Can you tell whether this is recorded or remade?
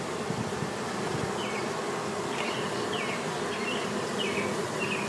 recorded